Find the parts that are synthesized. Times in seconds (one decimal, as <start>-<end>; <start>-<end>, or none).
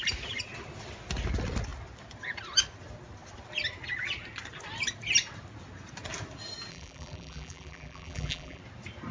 6.7-8.6